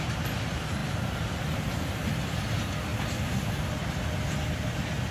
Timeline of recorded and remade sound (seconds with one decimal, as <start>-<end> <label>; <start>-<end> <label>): 0.0-0.8 recorded; 0.8-2.1 remade; 2.1-5.1 recorded